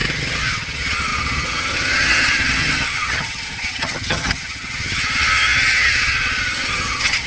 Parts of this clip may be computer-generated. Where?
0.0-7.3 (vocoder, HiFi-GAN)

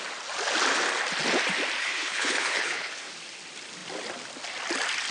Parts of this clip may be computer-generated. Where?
1.8-3.1 (codec, HILCodec)

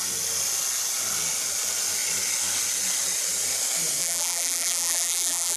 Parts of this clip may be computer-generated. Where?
4.0-5.6 (vocoder, BigVGAN v2)

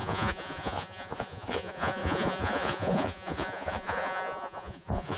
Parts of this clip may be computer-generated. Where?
0.0-5.2 (vocoder, Vocos)

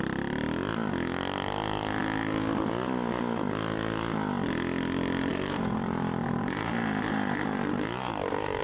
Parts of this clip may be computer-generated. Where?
5.3-8.6 (vocoder, BigVGAN v2)

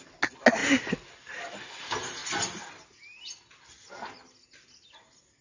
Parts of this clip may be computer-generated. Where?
none

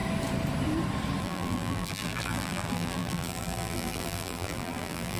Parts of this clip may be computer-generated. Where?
1.2-5.2 (vocoder, BigVGAN v2)

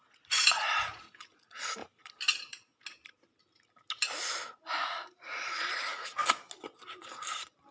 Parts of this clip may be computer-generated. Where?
0.0-1.8 (vocoder, Vocos); 2.3-2.7; 4.7-6.2